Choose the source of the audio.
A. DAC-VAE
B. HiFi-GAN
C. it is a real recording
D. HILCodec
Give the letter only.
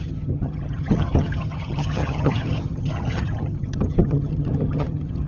B